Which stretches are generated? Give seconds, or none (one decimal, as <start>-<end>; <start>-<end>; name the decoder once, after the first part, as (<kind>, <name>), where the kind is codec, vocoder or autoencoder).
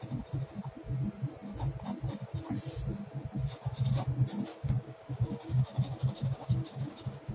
4.5-7.3 (codec, DAC)